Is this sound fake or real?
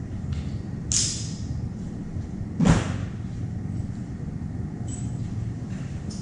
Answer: real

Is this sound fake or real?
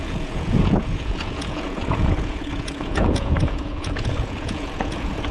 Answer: fake